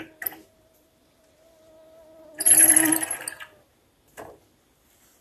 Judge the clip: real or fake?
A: real